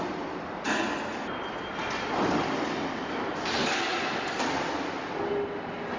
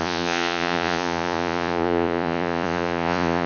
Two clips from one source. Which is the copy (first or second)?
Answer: second